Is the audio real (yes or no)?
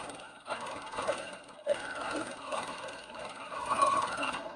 no